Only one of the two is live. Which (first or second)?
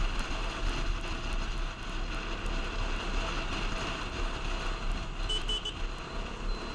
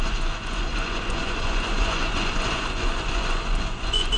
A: first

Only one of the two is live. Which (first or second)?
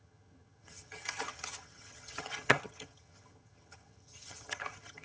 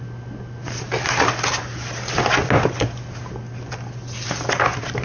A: second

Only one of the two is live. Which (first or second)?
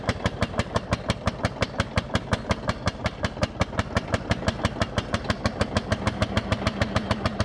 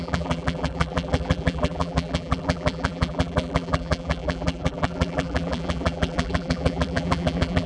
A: first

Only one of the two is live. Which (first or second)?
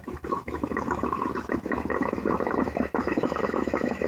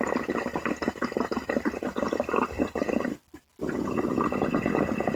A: second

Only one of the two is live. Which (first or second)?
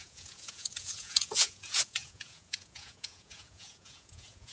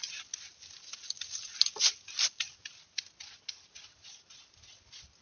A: second